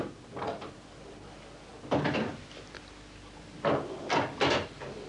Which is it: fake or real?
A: real